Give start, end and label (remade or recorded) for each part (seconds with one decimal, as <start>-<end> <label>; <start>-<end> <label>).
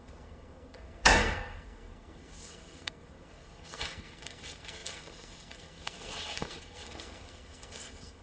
0.0-8.2 remade